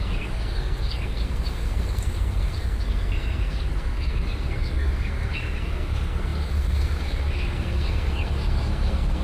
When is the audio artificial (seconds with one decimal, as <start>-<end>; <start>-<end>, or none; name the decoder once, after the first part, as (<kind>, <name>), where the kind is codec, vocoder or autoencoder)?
0.0-9.2 (codec, SNAC)